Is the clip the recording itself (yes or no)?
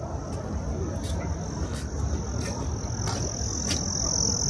yes